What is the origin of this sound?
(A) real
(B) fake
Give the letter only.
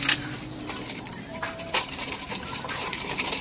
B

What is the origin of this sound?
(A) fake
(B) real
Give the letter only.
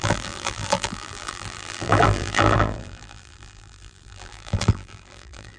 A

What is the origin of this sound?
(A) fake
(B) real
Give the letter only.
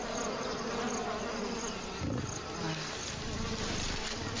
B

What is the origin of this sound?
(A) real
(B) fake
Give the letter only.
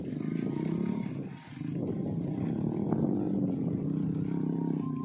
A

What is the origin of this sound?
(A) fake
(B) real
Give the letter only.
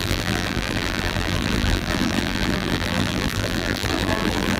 A